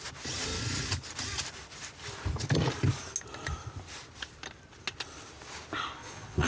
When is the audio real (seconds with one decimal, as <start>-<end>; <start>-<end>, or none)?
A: 0.0-6.0